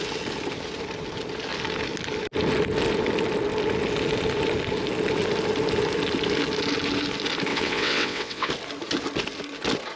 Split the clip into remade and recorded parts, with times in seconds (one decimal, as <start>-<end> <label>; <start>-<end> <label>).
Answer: 0.0-7.5 recorded; 7.5-8.5 remade; 8.5-10.0 recorded